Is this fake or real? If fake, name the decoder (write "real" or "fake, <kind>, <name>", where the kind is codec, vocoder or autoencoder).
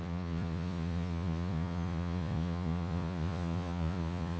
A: fake, vocoder, Vocos